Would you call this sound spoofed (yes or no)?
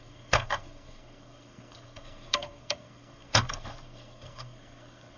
yes